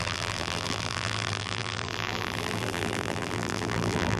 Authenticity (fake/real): fake